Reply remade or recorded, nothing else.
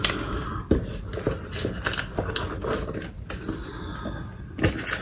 recorded